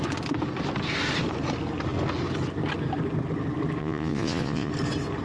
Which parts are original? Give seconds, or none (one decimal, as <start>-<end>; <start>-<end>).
0.0-3.8; 4.7-5.2